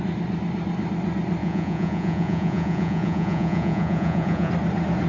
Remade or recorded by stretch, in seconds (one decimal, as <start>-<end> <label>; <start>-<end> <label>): 0.0-1.4 recorded; 1.4-4.5 remade; 4.5-5.1 recorded